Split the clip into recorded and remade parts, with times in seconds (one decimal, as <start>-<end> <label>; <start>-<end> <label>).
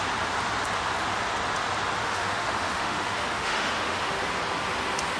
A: 0.0-2.0 recorded; 2.0-4.2 remade; 4.2-5.2 recorded